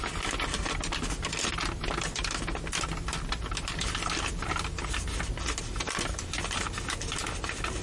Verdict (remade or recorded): recorded